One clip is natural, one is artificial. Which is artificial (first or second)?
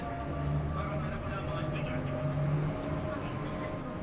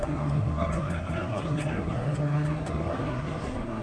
second